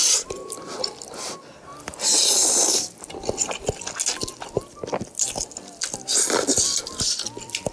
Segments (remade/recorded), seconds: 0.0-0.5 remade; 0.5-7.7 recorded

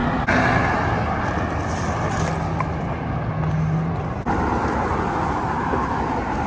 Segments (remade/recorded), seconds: 0.0-6.5 recorded

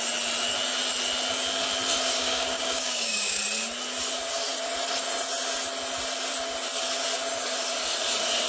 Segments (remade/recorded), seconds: 0.0-2.2 recorded; 2.2-3.4 remade; 3.4-8.5 recorded

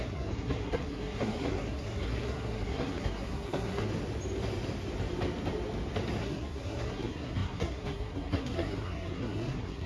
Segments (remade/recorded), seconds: 0.0-3.9 remade; 3.9-6.2 recorded; 6.2-9.9 remade